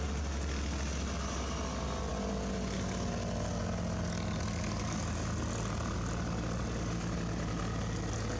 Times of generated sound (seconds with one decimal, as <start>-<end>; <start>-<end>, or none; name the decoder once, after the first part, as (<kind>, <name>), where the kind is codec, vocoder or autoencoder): none

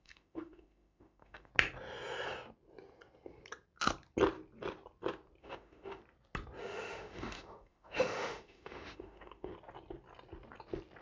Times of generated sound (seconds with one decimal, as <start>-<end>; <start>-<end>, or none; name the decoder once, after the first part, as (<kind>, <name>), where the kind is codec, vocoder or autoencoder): 0.0-1.5 (autoencoder, DAC-VAE); 5.4-6.0; 6.6-9.5

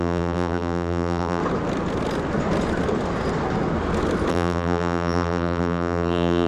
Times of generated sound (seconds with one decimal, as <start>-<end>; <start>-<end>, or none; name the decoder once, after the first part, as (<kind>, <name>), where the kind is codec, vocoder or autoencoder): 0.0-1.4 (vocoder, BigVGAN v2); 4.3-6.5

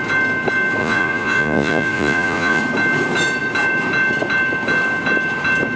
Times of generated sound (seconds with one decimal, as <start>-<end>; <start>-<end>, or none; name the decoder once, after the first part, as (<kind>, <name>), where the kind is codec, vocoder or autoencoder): 0.8-2.6 (vocoder, Vocos)

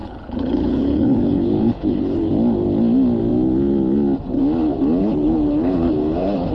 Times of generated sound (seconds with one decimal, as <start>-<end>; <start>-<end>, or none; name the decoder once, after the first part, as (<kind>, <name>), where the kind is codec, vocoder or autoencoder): 0.0-2.3 (codec, HILCodec); 5.0-6.5